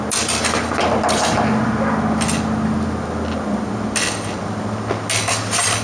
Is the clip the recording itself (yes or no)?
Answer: yes